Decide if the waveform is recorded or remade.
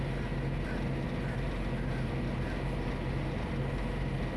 recorded